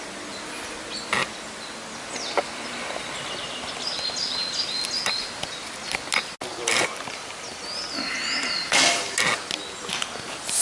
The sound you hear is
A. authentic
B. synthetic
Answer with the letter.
A